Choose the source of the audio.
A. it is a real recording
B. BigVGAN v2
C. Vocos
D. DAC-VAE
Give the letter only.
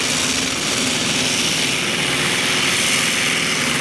A